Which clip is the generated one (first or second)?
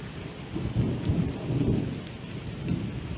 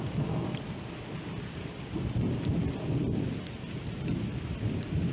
second